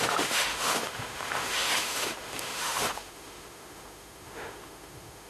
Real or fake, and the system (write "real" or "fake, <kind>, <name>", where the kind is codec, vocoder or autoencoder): fake, autoencoder, DAC-VAE